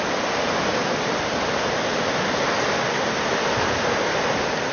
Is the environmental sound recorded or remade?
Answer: recorded